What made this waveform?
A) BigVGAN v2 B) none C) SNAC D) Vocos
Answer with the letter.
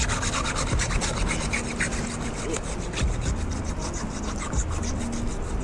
B